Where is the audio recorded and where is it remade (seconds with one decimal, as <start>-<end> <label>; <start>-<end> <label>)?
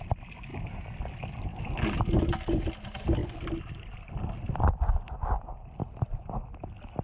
0.0-3.2 recorded; 3.2-3.8 remade; 3.8-7.0 recorded